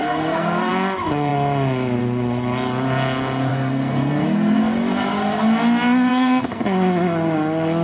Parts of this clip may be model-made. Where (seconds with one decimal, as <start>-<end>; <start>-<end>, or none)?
0.0-0.7; 3.5-4.6; 6.1-6.6